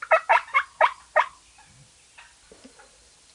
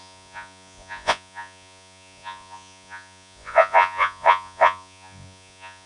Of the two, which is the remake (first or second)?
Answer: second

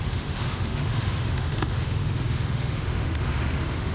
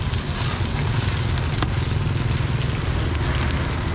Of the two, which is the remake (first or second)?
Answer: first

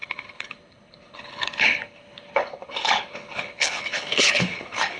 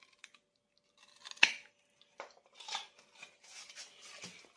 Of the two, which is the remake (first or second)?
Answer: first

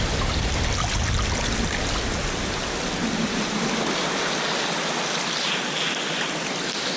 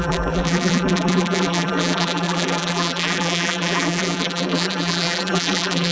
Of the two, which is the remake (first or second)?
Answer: second